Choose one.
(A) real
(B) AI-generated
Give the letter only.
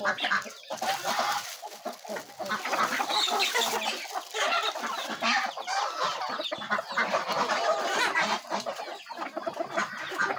A